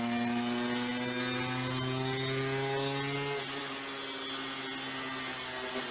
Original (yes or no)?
yes